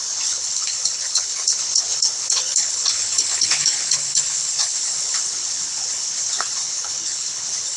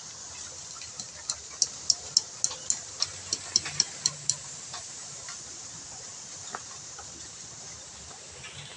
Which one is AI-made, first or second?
first